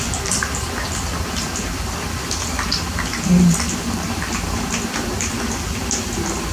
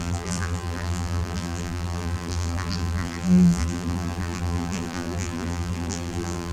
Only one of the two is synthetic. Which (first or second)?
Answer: second